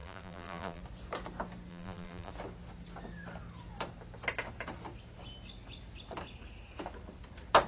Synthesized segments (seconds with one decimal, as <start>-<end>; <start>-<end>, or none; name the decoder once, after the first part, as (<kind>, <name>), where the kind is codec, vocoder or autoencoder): 0.0-0.8 (vocoder, BigVGAN v2); 1.7-2.3